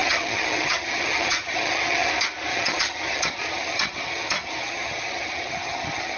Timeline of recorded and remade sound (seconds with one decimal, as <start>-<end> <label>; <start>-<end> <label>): 0.0-2.1 remade; 2.1-2.5 recorded; 2.5-6.2 remade